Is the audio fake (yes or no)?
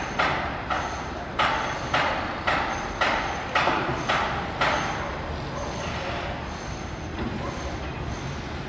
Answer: no